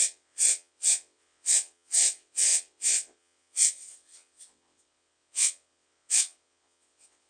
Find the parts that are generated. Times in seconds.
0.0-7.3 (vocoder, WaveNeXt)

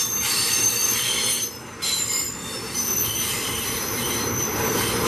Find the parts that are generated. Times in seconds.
0.0-5.1 (vocoder, BigVGAN v2)

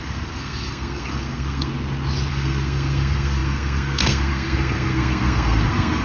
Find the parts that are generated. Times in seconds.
0.0-1.7 (codec, SNAC); 2.3-6.0

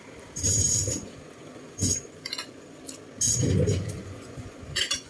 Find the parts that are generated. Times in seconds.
1.0-2.8 (vocoder, Vocos); 4.0-5.1

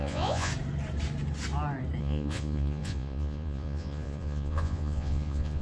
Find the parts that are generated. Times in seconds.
0.0-0.5 (vocoder, Vocos); 2.0-5.6

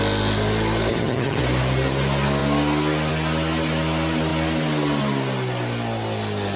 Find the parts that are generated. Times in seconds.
0.9-1.4 (vocoder, HiFi-GAN)